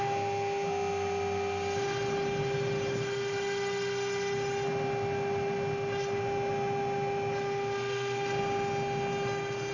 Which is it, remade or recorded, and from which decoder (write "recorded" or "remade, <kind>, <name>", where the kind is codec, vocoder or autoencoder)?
recorded